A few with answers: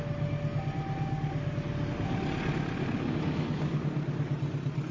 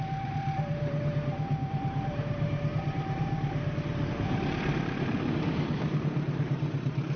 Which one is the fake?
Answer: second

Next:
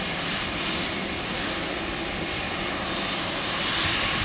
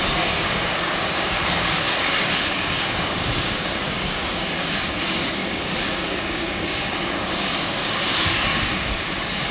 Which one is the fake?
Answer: second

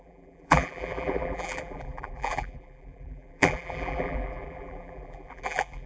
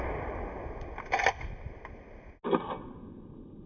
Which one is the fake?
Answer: first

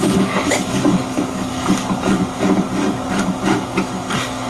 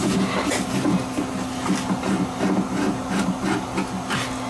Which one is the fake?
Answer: first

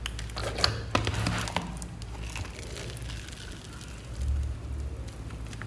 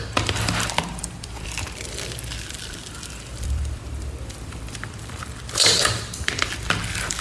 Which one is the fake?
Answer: second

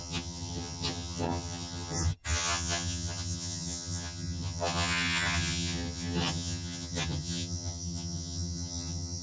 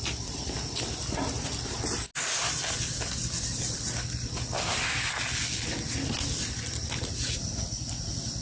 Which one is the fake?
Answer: first